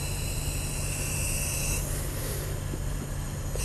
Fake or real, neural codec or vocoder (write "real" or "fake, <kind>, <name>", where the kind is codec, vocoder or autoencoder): real